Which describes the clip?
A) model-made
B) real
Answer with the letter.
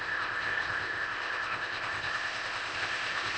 A